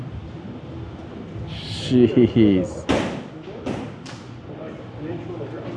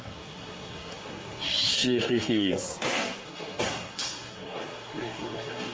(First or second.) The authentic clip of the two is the first